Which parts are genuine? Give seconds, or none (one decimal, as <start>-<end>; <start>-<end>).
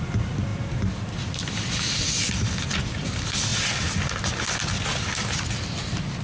0.0-6.2